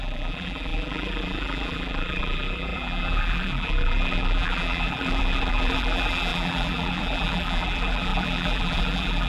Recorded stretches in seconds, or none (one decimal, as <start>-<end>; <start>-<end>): none